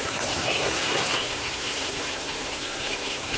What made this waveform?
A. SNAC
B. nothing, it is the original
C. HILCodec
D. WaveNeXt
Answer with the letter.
A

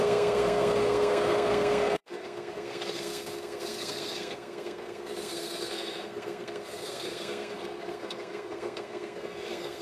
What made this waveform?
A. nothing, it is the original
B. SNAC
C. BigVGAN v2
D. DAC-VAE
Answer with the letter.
B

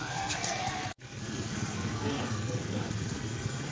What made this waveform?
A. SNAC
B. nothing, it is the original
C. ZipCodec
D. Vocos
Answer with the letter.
A